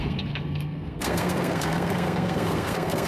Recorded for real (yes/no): no